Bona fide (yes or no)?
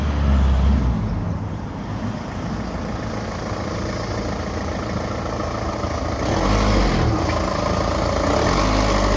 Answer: yes